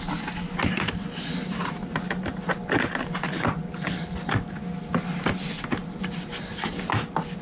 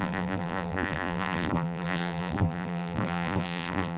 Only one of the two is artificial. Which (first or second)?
second